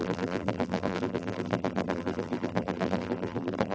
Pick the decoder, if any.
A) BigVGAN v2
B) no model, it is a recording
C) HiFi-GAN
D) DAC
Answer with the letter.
A